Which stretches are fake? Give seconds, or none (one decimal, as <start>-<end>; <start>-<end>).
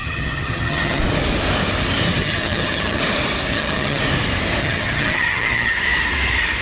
0.0-1.0; 2.2-3.0; 3.5-4.0; 4.6-5.7